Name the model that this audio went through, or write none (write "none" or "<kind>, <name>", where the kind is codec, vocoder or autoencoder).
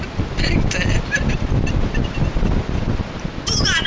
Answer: none